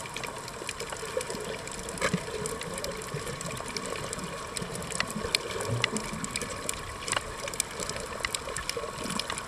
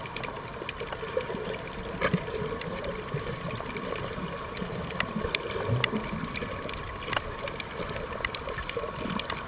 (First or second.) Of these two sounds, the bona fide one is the first